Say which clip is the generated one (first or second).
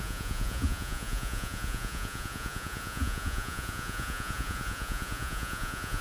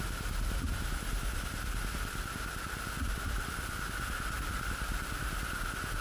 first